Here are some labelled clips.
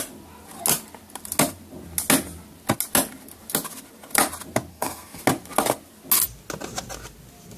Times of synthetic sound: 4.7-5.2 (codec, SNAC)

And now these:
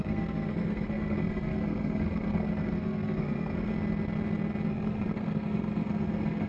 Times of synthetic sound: 0.0-3.7 (codec, SNAC); 4.7-6.5

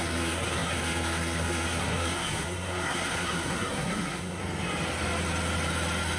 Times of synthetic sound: 0.0-4.4 (codec, SNAC)

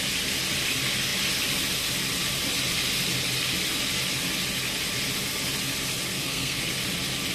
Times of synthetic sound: 6.1-6.6 (codec, SNAC)